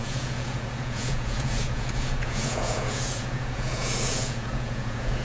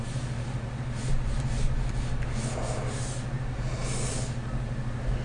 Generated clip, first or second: first